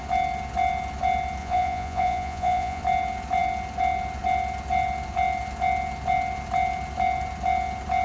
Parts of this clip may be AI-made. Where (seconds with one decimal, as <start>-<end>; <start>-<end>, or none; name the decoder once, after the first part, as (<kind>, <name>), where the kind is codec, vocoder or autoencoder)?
1.4-2.8 (vocoder, Vocos)